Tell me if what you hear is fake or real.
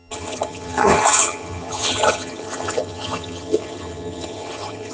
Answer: fake